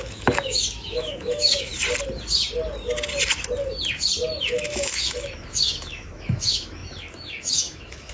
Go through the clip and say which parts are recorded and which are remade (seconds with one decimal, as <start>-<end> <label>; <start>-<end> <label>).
0.0-1.7 remade; 1.7-4.4 recorded; 4.4-8.1 remade